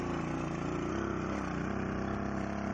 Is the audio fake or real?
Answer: real